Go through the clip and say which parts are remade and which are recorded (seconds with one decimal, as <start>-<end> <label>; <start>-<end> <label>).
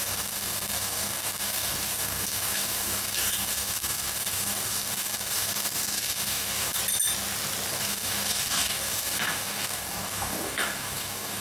0.0-6.8 remade; 6.8-7.7 recorded; 7.7-11.4 remade